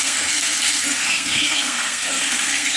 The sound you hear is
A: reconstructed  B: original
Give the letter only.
A